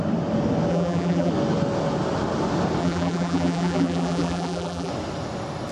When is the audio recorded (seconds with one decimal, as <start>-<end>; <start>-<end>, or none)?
0.0-0.7; 1.3-2.8; 4.9-5.7